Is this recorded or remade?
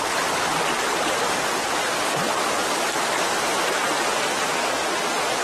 remade